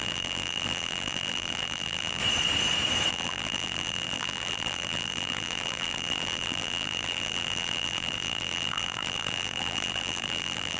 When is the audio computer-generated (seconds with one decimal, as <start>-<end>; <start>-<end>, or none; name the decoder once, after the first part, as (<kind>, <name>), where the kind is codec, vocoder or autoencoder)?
0.0-2.2 (vocoder, BigVGAN v2); 3.1-10.8